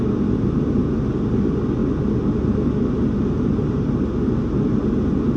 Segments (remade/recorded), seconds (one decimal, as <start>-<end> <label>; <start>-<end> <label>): 0.0-5.4 recorded